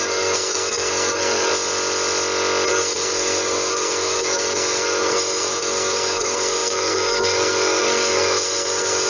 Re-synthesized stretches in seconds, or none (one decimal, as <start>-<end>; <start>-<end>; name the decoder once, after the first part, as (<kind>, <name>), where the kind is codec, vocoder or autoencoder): 0.0-1.5 (codec, SNAC); 2.7-9.1